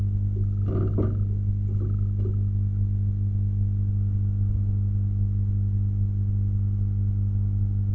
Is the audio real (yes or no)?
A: yes